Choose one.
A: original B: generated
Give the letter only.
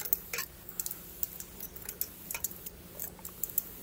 A